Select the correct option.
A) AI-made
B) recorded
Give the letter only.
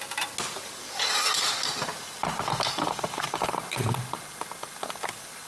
B